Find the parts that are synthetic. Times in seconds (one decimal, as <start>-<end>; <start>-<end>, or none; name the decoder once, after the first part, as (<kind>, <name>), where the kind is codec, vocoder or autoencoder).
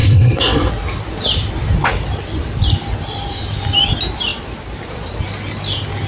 0.0-0.7 (codec, SNAC)